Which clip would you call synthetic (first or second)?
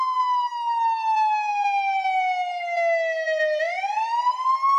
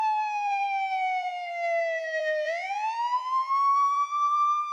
second